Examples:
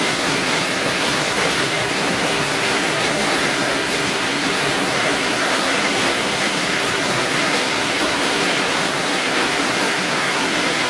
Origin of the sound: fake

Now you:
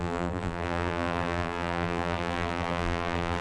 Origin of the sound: fake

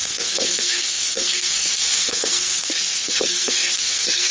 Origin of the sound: fake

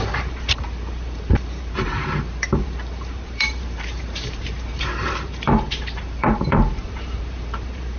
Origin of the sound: fake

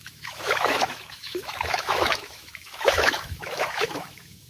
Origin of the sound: fake